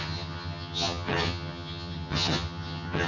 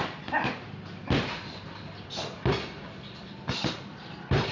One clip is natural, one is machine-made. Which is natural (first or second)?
second